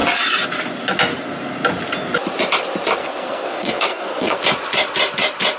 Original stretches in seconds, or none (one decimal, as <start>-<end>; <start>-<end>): 0.0-3.0; 4.4-5.6